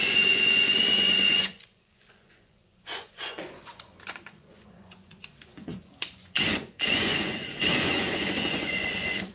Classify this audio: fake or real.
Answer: fake